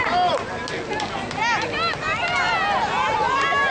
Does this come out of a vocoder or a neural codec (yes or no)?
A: no